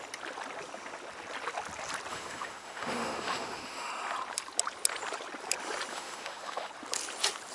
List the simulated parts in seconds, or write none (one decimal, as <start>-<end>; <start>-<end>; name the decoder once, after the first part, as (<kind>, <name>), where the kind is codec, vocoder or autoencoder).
2.1-3.9 (autoencoder, DAC-VAE); 5.9-6.7